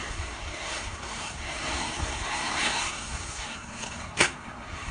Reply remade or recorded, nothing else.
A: remade